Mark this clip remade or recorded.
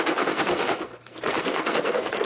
remade